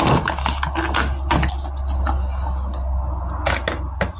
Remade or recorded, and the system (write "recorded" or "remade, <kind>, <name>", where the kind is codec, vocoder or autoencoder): recorded